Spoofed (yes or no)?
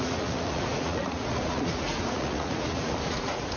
yes